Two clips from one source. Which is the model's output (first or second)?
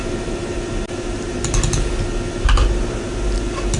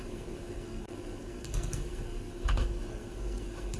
second